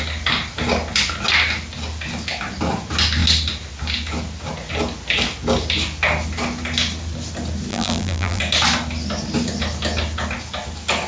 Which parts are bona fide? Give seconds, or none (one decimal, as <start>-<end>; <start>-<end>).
0.0-7.7; 8.4-11.1